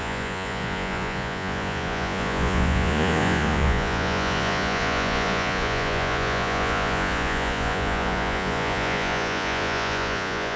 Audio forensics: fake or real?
fake